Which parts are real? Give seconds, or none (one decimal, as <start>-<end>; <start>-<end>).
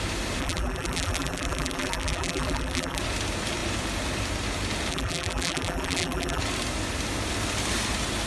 0.0-0.4; 3.0-4.9; 6.4-8.3